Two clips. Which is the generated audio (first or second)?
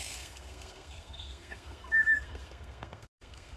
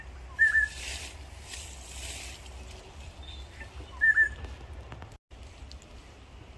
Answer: first